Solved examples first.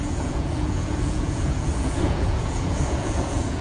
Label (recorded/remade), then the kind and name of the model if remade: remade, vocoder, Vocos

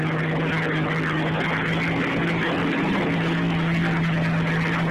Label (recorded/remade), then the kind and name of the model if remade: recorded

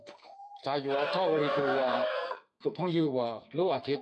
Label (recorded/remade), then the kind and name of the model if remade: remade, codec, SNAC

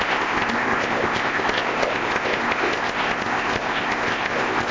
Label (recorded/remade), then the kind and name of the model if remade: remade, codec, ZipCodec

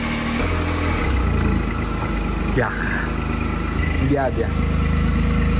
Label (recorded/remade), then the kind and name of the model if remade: recorded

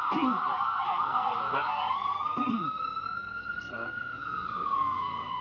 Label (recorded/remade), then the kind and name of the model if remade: remade, codec, SNAC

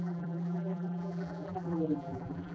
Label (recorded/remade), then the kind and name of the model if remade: remade, vocoder, BigVGAN v2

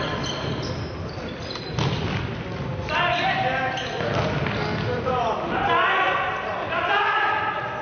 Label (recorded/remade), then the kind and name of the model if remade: recorded